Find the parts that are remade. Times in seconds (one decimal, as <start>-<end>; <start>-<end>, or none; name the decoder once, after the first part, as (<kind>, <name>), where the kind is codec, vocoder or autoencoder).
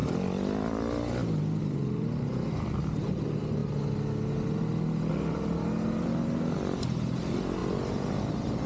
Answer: none